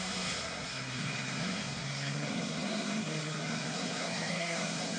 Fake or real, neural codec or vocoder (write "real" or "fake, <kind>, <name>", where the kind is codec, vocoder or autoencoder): fake, codec, SNAC